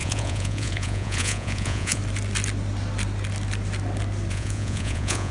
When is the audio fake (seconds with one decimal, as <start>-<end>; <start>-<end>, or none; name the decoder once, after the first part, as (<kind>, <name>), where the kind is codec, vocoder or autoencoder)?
0.0-2.0 (vocoder, Vocos); 4.3-5.3